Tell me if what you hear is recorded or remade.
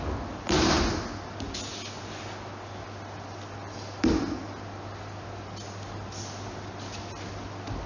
recorded